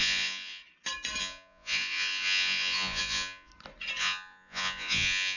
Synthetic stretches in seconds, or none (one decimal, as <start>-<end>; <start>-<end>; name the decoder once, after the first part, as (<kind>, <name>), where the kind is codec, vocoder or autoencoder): 0.0-0.6 (vocoder, Vocos); 1.2-3.5; 4.0-5.4